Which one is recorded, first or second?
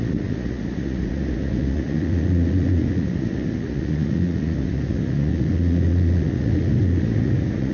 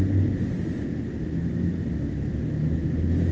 second